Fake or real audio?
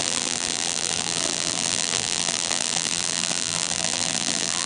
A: fake